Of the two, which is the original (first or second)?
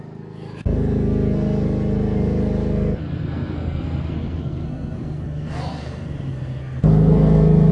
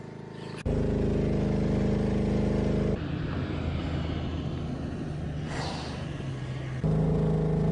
second